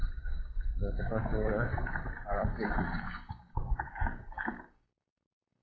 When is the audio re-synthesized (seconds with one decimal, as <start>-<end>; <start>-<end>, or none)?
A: 0.0-1.7; 3.0-5.6